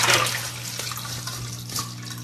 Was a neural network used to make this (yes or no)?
no